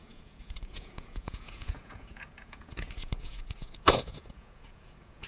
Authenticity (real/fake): fake